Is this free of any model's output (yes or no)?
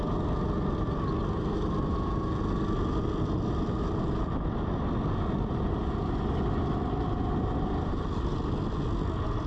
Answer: yes